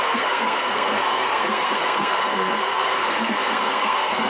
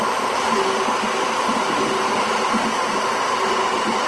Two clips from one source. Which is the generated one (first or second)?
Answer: first